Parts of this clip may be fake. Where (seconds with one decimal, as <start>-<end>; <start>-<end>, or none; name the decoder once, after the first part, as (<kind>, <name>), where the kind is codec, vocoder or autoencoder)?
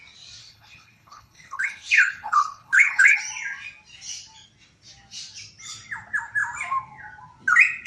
0.4-3.2 (codec, HILCodec)